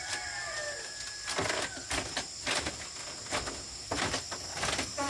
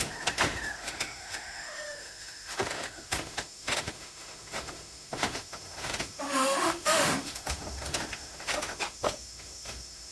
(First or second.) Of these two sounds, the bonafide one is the first